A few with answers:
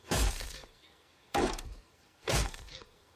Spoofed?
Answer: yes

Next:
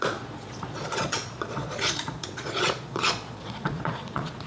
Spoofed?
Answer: yes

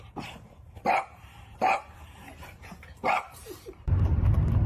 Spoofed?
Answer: yes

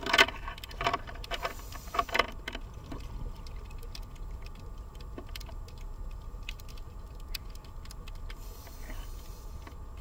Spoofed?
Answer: yes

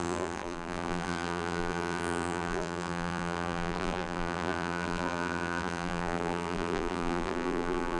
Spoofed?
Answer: yes